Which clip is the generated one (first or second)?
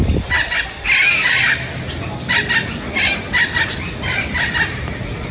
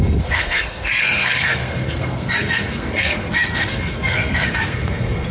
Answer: second